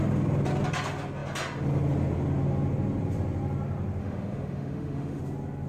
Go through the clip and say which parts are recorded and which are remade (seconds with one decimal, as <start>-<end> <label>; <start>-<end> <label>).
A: 0.0-4.0 recorded; 4.0-5.2 remade; 5.2-5.7 recorded